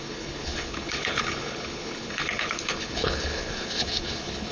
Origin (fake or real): fake